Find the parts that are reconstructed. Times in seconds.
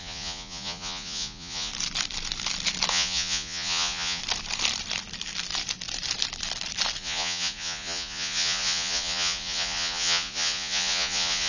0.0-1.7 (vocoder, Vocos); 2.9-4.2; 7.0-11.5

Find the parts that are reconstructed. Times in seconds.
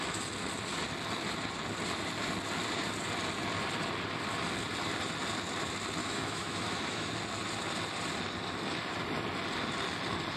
6.0-7.1 (autoencoder, DAC-VAE)